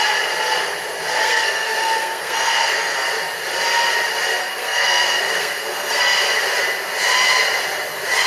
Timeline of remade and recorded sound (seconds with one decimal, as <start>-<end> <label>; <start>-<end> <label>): 0.0-1.2 recorded; 1.2-3.1 remade; 3.1-4.4 recorded; 4.4-6.0 remade; 6.0-8.3 recorded